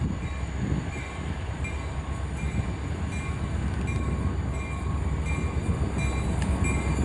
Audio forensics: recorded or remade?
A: recorded